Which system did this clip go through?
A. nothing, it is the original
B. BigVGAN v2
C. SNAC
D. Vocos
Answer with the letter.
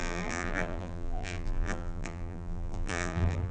B